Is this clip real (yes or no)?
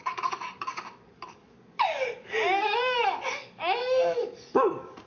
no